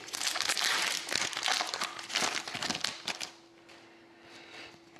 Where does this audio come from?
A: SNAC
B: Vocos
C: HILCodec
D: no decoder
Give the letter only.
D